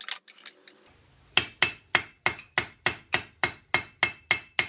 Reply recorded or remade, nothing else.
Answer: recorded